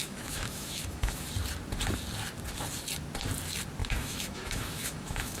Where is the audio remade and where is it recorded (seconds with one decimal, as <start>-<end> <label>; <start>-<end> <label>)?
0.0-1.3 remade; 1.3-3.8 recorded; 3.8-5.4 remade